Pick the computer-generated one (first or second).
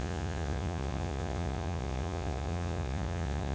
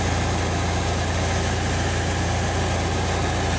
first